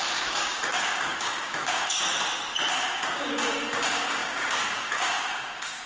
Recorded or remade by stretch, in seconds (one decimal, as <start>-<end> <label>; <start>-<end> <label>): 0.0-2.0 remade; 2.0-2.7 recorded; 2.7-5.9 remade